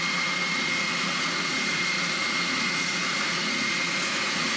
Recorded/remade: remade